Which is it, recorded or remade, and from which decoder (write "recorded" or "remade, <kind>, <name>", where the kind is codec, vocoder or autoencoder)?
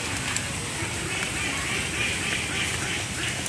recorded